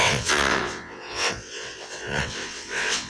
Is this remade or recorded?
remade